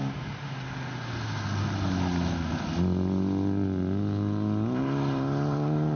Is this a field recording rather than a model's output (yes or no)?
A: yes